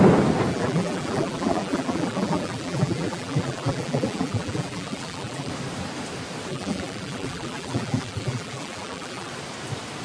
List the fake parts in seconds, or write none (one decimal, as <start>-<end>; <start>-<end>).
0.5-5.5; 6.5-9.3